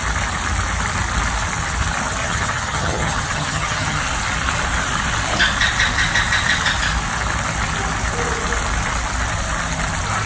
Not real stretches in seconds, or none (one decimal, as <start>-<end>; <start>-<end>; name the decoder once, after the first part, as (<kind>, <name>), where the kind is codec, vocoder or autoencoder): 2.2-4.0 (vocoder, HiFi-GAN)